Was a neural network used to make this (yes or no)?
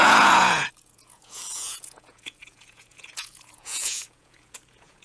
yes